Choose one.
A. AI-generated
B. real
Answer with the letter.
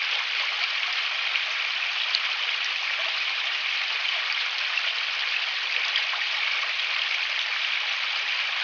B